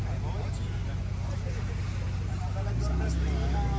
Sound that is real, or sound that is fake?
real